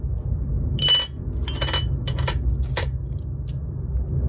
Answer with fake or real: real